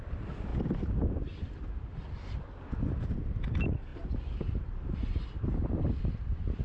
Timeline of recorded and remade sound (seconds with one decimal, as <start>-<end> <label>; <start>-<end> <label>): 0.0-6.6 recorded